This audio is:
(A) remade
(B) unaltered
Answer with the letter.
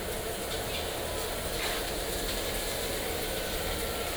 B